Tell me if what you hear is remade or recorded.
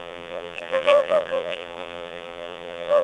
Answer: remade